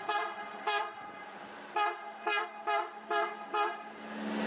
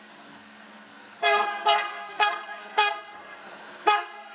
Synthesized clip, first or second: second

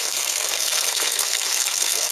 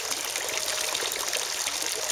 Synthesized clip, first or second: first